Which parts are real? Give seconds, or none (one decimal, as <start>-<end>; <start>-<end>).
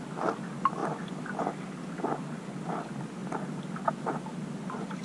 0.0-5.0